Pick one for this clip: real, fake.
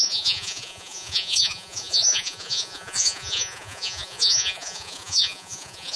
fake